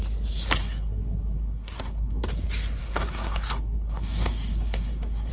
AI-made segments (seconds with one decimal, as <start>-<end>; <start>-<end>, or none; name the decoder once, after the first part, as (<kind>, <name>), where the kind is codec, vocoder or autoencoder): 0.6-2.2 (codec, SNAC); 2.8-5.3